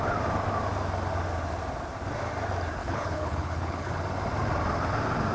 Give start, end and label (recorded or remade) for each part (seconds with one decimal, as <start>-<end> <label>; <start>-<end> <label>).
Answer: 0.0-2.8 recorded; 2.8-3.9 remade; 3.9-5.3 recorded